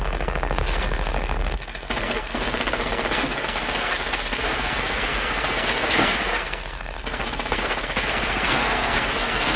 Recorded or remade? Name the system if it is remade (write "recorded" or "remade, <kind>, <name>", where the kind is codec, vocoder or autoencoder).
remade, codec, SNAC